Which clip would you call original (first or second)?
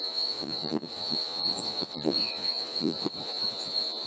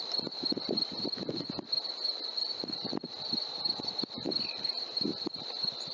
second